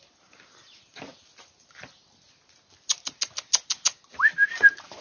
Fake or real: real